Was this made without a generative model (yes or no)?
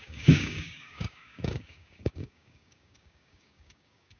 no